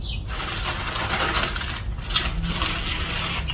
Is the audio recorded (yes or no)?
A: yes